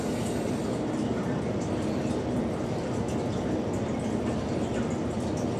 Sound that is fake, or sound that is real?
real